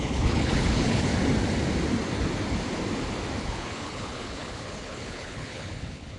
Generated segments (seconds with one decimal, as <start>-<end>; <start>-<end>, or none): 0.0-1.1; 3.4-6.2

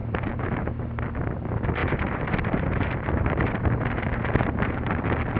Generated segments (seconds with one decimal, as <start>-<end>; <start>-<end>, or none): 0.0-0.7; 1.8-5.0

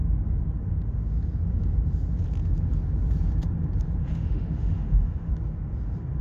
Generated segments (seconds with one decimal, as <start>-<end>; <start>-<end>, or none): 4.0-5.3

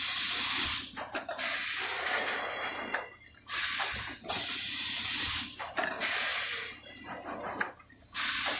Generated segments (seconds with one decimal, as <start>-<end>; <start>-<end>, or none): none

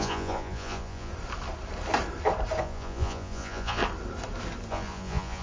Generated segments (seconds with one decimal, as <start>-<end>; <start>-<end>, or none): 0.0-1.1; 2.6-3.8; 4.7-5.4

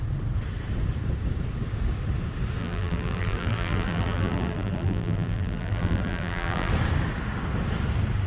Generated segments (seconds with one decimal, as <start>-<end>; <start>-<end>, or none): 2.6-6.7

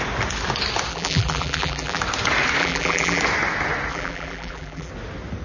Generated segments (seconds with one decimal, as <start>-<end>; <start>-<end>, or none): 0.9-2.0; 2.6-3.2; 3.9-4.9

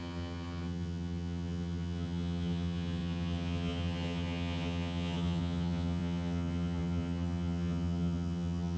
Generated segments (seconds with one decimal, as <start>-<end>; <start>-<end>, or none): 0.0-8.8